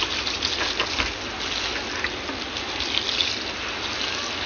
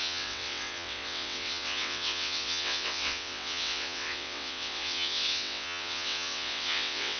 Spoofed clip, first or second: second